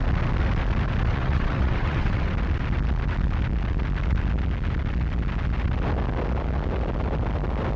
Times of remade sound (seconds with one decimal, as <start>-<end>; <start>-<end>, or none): 1.1-2.3